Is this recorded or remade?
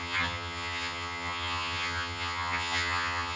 remade